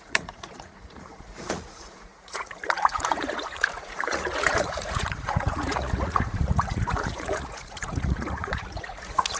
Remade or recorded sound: remade